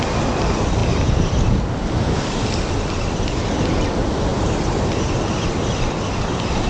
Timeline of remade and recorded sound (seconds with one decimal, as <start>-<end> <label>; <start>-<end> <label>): 0.0-6.7 recorded